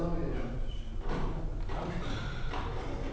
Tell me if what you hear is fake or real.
real